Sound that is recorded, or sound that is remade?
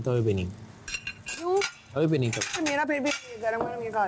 recorded